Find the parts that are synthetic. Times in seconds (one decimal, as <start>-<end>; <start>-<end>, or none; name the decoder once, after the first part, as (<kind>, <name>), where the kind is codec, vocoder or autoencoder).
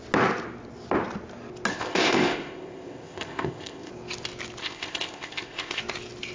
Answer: 1.7-3.9 (codec, ZipCodec); 4.6-5.8